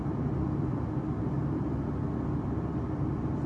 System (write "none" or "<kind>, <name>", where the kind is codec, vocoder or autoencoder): none